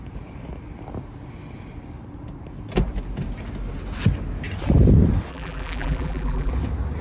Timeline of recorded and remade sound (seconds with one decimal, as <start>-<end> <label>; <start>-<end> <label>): 0.0-5.3 recorded; 5.3-6.5 remade; 6.5-7.0 recorded